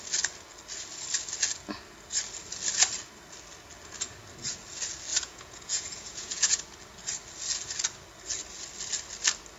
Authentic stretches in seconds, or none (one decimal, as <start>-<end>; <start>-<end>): 0.0-5.1; 6.6-9.6